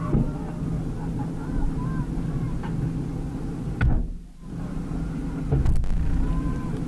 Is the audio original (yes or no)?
yes